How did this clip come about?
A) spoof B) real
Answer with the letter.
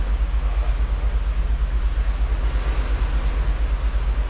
B